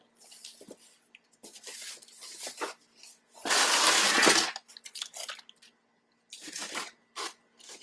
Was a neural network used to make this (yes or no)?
no